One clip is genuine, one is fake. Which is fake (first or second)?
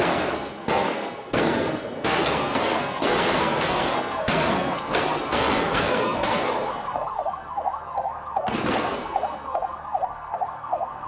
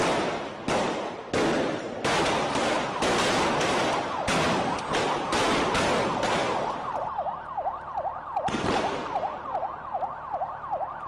first